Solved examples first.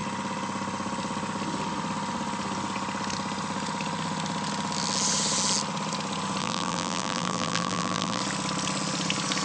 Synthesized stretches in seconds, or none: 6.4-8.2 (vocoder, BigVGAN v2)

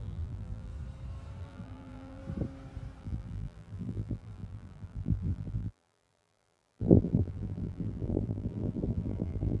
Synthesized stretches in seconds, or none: 0.0-0.7 (vocoder, BigVGAN v2); 1.4-2.2; 3.0-9.6

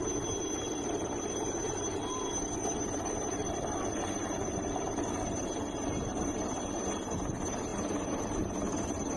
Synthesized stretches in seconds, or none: 0.0-3.4 (vocoder, BigVGAN v2); 4.2-9.2

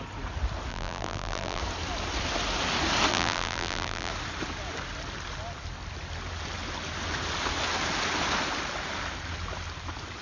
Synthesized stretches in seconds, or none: 0.7-1.6 (vocoder, BigVGAN v2); 3.1-4.1